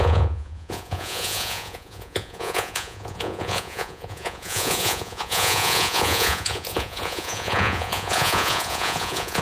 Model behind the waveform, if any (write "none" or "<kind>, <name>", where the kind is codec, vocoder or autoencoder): vocoder, Vocos